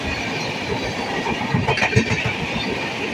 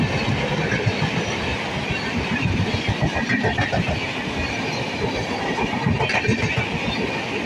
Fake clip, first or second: first